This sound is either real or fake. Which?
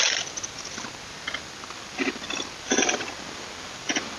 real